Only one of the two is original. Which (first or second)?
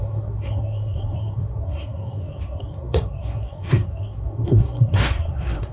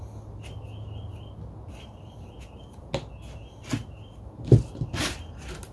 second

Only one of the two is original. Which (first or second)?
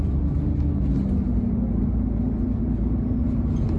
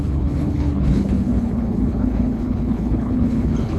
first